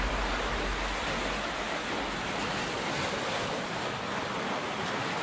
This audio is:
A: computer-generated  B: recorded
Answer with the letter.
B